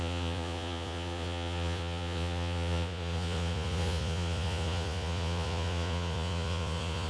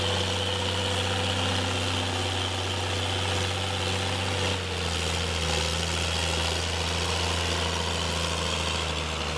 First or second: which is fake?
first